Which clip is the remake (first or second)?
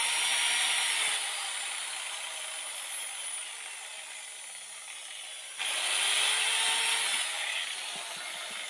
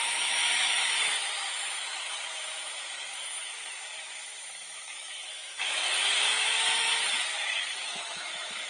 second